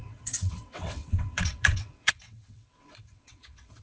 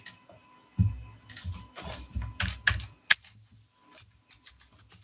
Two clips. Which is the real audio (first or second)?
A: second